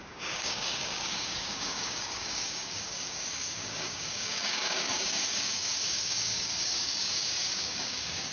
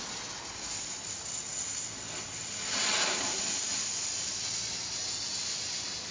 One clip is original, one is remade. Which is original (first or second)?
second